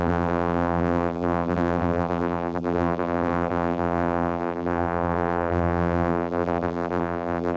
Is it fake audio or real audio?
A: fake